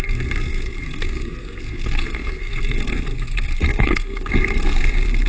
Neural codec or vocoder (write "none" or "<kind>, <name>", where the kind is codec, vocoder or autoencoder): codec, SNAC